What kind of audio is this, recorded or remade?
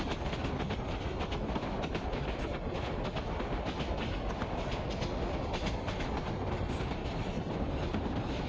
recorded